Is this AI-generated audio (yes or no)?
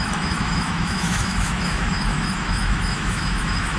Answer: yes